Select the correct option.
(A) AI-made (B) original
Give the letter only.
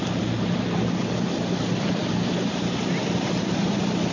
B